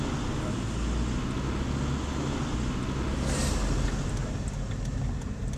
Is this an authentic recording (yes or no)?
yes